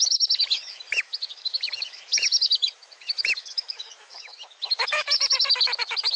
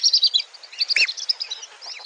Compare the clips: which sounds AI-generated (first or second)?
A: first